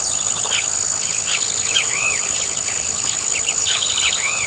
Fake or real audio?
fake